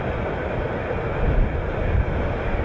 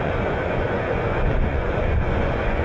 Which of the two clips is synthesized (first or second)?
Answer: second